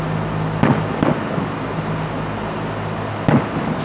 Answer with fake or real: real